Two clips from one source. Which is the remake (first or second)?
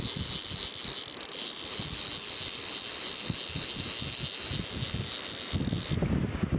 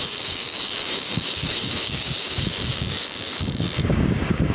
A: second